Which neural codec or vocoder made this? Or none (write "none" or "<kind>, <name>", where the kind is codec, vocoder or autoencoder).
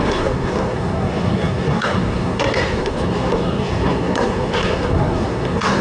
codec, SNAC